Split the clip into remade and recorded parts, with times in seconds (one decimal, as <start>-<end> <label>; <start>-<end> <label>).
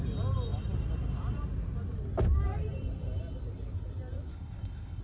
0.0-4.3 recorded; 4.3-5.0 remade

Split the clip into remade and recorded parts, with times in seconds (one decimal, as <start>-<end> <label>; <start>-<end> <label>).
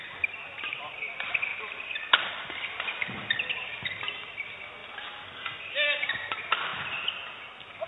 0.0-7.9 recorded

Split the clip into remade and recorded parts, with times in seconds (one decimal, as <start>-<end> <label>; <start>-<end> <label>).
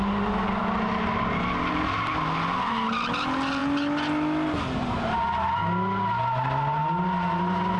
0.0-7.8 recorded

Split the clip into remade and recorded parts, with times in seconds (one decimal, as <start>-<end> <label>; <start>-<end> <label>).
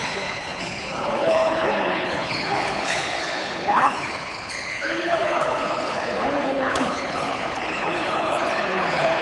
0.0-9.2 remade